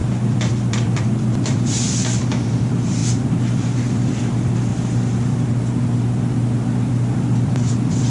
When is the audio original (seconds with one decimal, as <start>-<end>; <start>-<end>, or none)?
4.7-6.9